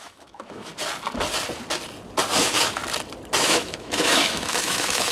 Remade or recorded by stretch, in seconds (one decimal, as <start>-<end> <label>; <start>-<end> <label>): 0.0-0.7 remade; 0.7-2.4 recorded; 2.4-2.8 remade; 2.8-3.4 recorded; 3.4-5.1 remade